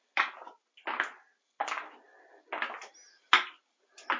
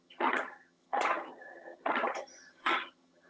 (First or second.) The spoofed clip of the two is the second